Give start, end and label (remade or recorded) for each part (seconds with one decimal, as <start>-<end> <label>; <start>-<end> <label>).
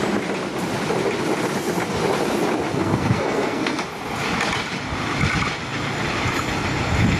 0.0-2.7 recorded; 2.7-3.8 remade; 3.8-7.2 recorded